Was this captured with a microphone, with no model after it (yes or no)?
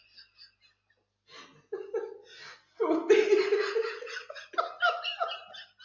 yes